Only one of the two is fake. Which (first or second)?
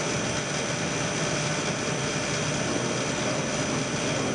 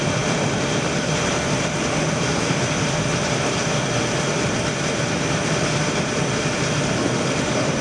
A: second